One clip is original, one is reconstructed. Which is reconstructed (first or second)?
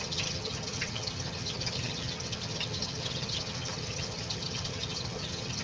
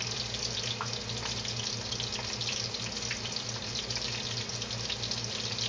first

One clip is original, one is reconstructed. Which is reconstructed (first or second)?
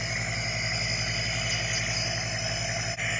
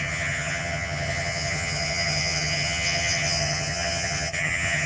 second